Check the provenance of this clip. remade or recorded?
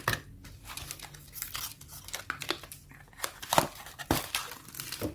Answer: recorded